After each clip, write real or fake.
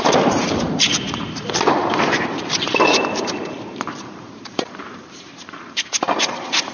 fake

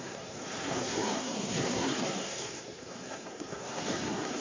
fake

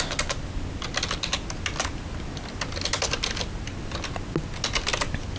real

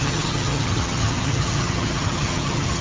fake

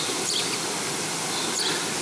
real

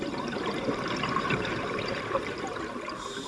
fake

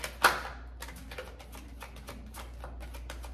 real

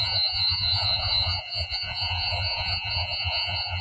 fake